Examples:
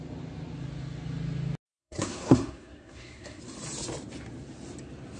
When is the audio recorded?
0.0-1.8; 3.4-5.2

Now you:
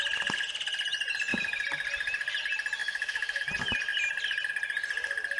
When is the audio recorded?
0.0-2.8; 3.4-5.4

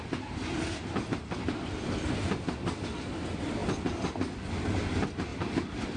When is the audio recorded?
0.0-5.3

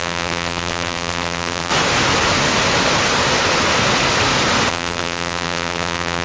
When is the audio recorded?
1.7-4.7

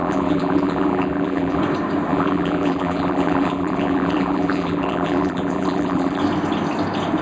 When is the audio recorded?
1.6-2.1; 6.2-7.2

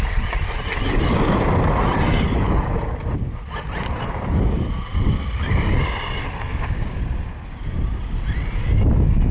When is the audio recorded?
0.0-6.5; 7.0-9.3

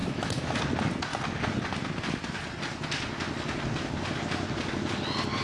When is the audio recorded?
0.6-5.4